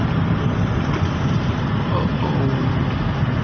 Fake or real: real